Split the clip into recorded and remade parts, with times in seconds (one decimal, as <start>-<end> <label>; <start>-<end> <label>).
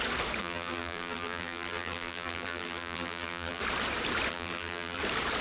0.0-0.4 recorded; 0.4-3.6 remade; 3.6-4.3 recorded; 4.3-5.0 remade; 5.0-5.4 recorded